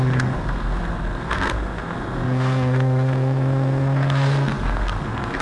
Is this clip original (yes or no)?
no